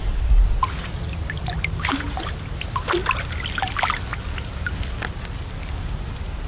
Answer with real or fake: real